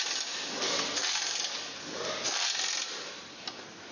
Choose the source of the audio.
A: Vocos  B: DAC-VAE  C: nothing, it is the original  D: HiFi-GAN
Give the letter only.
C